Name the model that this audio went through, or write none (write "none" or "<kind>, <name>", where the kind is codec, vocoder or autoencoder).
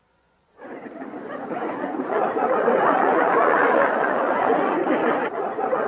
vocoder, Vocos